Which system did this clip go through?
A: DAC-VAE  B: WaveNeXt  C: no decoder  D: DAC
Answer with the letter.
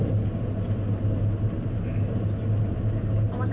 C